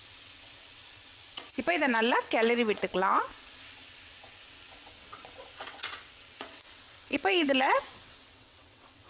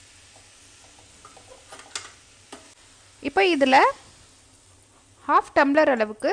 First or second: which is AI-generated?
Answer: first